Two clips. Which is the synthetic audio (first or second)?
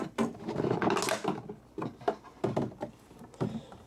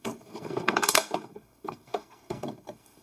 second